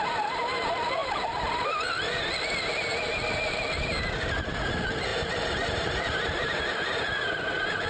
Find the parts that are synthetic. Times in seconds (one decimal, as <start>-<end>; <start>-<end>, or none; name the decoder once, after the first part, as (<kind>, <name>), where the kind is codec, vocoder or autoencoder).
5.1-6.7 (vocoder, BigVGAN v2)